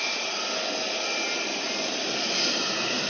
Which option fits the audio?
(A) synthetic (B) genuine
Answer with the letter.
B